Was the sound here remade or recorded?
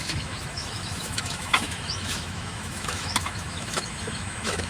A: remade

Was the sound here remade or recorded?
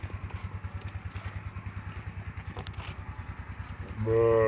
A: recorded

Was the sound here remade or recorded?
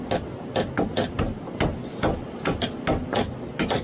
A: recorded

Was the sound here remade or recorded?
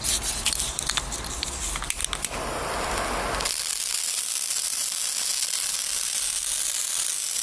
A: recorded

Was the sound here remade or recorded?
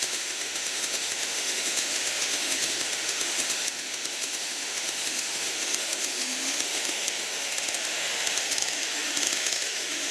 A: remade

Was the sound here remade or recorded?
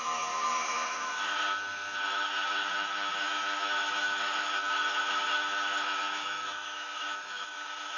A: remade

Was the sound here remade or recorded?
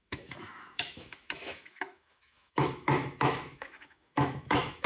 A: remade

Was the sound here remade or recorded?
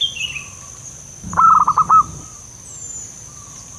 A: recorded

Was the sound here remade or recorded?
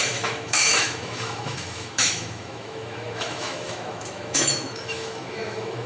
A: remade